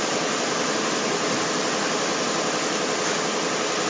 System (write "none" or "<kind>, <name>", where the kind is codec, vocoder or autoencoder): none